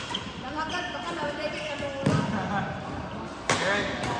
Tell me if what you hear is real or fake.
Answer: real